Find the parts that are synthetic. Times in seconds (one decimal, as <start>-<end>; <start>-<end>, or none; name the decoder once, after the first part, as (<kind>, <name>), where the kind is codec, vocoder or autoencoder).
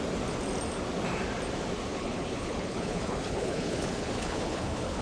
1.9-5.0 (codec, HILCodec)